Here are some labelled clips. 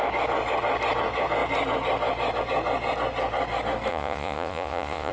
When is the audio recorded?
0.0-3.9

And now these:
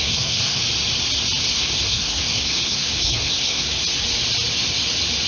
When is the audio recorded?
0.6-1.4; 3.8-5.3

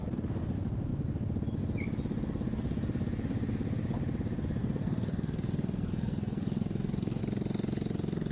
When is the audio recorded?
0.0-4.6; 7.2-8.3

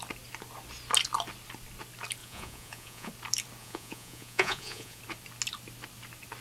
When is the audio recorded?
0.0-2.2; 3.1-3.6; 5.0-6.4

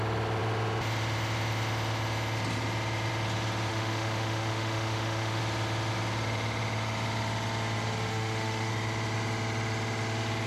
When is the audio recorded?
0.0-3.7; 5.4-8.1; 8.7-10.5

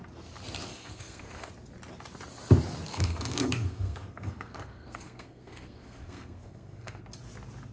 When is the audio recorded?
0.0-0.7; 1.5-2.9; 7.0-7.7

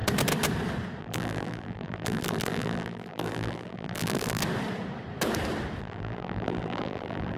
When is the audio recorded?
0.0-1.0; 4.4-5.8

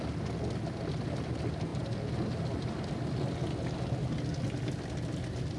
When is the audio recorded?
0.0-5.6